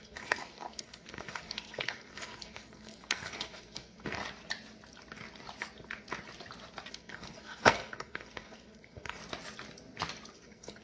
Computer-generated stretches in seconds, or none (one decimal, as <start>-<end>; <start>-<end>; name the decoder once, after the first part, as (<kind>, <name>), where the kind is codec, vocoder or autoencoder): 0.0-4.2 (codec, SNAC); 6.9-9.2; 10.3-10.8